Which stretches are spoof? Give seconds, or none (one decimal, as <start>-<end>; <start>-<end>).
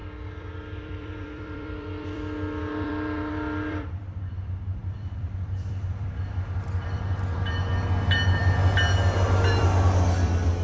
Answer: 0.0-4.0; 4.8-7.1